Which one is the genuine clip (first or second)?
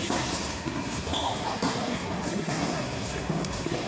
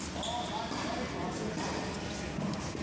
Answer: second